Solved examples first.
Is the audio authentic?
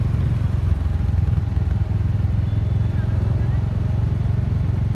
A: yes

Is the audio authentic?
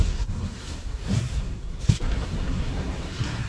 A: no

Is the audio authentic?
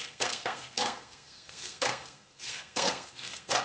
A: no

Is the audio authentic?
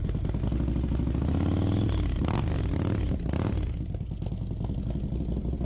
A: yes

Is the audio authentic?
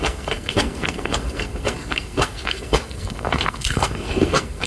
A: no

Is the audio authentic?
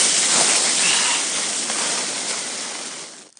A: yes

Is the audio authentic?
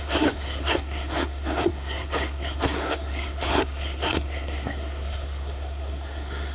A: no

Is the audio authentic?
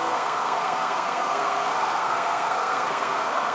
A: no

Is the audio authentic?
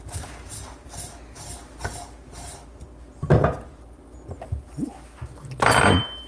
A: yes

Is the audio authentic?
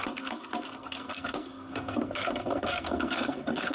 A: no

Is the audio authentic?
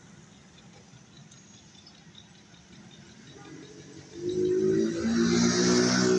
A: yes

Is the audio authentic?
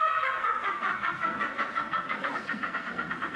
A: no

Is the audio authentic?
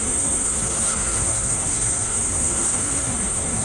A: no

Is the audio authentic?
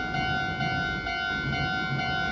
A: yes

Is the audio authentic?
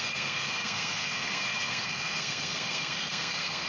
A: no